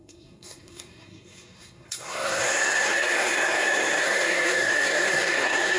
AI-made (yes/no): yes